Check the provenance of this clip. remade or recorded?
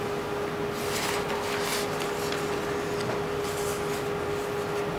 recorded